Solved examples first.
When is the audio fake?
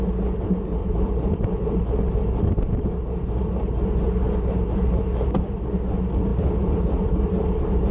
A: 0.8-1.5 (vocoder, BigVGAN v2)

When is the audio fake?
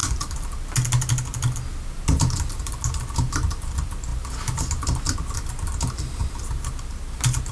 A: none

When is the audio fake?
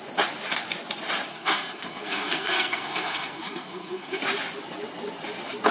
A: 1.3-4.2 (codec, SNAC)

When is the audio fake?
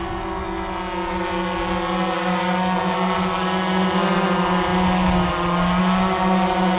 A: none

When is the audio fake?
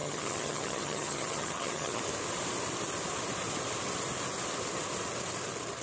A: 0.0-2.0 (vocoder, HiFi-GAN)